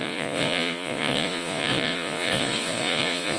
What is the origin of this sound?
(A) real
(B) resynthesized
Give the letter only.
B